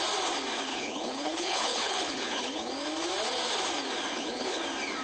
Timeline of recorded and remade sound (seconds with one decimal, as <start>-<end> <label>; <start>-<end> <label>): 0.0-0.7 recorded; 0.7-2.7 remade; 2.7-4.1 recorded; 4.1-4.6 remade; 4.6-5.0 recorded